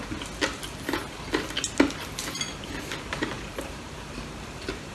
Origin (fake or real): real